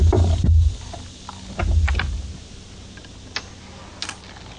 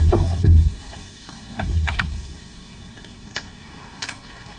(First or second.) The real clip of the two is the first